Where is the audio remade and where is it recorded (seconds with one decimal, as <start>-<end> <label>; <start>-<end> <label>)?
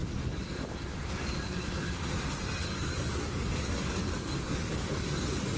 0.0-2.6 recorded; 2.6-5.6 remade